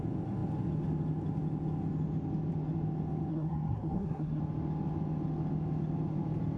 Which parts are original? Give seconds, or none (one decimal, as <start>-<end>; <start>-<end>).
0.0-3.3; 4.4-6.6